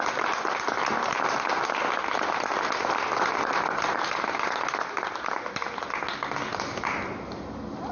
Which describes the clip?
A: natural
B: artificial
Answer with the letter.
A